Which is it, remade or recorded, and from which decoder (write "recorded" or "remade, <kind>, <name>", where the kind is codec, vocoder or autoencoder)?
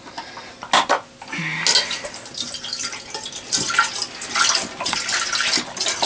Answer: recorded